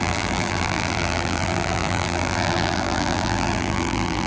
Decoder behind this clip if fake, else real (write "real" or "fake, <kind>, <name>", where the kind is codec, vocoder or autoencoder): fake, vocoder, BigVGAN v2